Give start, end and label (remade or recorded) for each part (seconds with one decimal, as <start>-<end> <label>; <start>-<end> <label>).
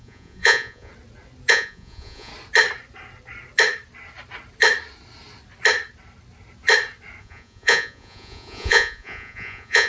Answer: 0.0-0.9 remade; 0.9-1.5 recorded; 1.5-2.3 remade; 2.3-7.2 recorded; 7.2-9.9 remade